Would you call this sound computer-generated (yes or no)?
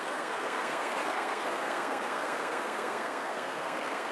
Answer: yes